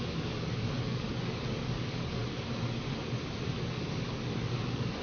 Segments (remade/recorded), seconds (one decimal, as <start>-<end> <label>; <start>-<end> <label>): 0.0-2.2 remade; 2.2-3.5 recorded; 3.5-5.0 remade